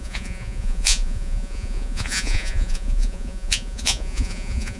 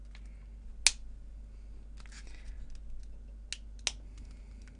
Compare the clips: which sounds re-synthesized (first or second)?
first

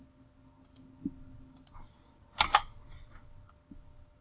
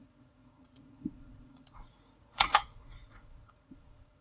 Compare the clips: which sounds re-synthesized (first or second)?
second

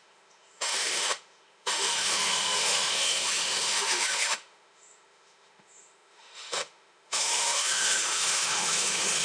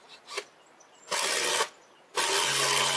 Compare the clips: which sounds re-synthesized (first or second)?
first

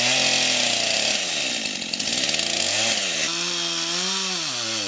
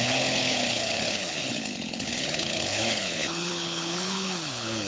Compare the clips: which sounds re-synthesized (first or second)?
second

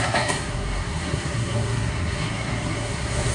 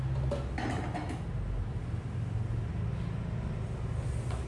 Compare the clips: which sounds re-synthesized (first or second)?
first